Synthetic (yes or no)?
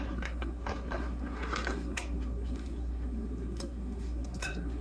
yes